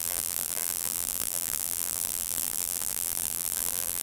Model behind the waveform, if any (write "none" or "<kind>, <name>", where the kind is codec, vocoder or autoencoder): vocoder, BigVGAN v2